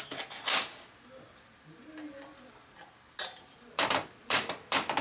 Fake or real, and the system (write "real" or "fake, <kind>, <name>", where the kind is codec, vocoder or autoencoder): real